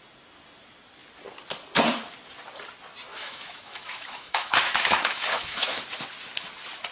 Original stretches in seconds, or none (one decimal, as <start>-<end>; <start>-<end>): 0.0-3.1; 5.8-6.9